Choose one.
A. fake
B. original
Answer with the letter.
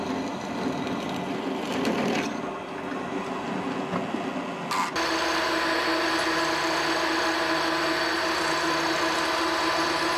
B